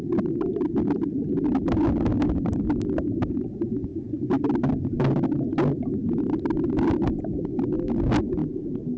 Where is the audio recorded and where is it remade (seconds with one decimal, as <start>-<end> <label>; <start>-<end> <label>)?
0.0-9.0 recorded